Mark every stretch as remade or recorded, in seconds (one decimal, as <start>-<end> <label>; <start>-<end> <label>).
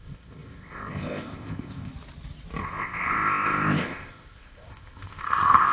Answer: 0.0-1.9 remade; 1.9-2.6 recorded; 2.6-5.7 remade